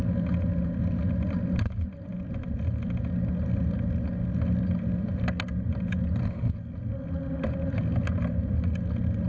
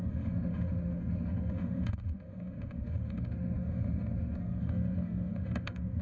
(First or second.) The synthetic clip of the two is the second